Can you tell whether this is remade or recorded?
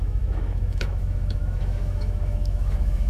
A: remade